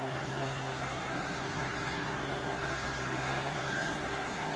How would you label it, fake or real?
fake